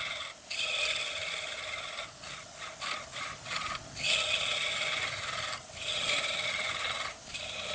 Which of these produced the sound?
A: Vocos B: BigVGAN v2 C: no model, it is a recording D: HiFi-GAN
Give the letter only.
C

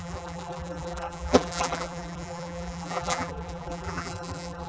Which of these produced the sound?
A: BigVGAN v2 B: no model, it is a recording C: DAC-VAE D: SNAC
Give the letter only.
A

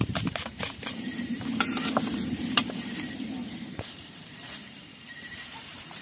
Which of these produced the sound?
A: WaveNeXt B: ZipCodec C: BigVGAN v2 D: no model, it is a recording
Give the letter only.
C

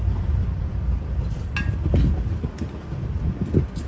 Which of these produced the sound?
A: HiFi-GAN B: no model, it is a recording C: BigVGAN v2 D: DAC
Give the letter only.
B